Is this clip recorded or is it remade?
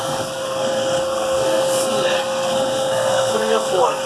remade